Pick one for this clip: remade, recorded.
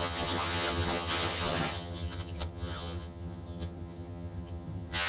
remade